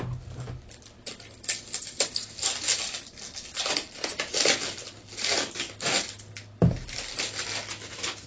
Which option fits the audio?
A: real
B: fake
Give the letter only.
A